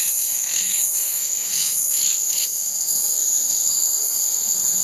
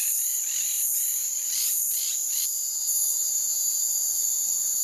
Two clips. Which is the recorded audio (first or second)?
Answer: second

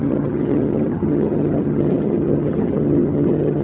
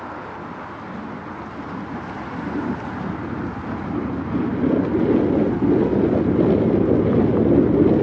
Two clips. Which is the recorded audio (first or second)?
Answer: second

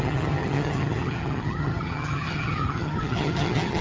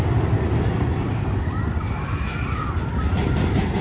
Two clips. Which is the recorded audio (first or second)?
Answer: second